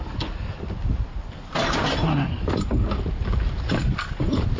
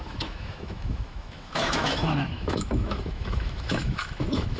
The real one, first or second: first